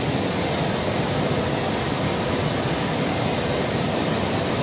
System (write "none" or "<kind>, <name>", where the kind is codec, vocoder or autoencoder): none